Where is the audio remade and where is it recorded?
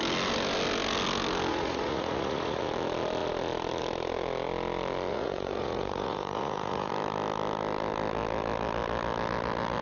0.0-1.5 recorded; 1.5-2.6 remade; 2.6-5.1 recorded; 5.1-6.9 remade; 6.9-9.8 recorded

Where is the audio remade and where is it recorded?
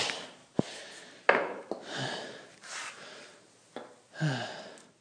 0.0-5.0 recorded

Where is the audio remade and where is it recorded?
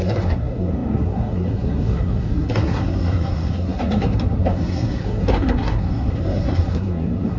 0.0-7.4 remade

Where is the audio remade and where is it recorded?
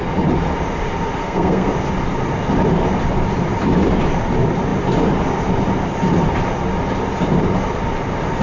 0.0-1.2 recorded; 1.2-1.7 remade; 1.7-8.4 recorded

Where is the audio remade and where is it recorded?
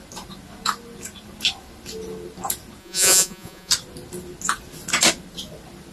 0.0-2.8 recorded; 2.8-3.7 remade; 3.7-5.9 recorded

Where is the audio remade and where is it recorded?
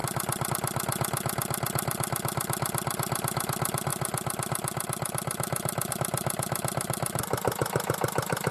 0.0-8.5 recorded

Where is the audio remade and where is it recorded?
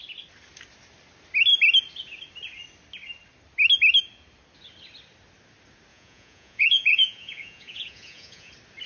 0.0-5.9 recorded; 5.9-8.5 remade; 8.5-8.9 recorded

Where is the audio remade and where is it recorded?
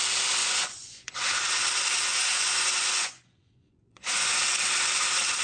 0.0-0.4 recorded; 0.4-1.3 remade; 1.3-2.1 recorded; 2.1-4.4 remade; 4.4-5.4 recorded